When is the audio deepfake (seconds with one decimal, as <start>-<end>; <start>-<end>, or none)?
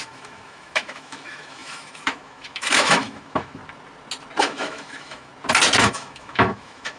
0.0-3.6; 4.4-5.3; 5.8-7.0